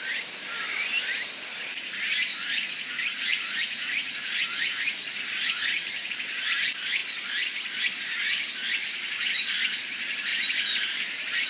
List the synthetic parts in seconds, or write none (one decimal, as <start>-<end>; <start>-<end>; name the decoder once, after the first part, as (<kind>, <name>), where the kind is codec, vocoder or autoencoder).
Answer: 2.3-6.1 (vocoder, Vocos)